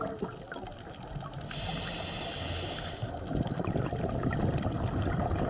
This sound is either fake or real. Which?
real